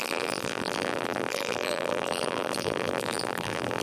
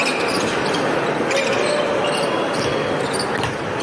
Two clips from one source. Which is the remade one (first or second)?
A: first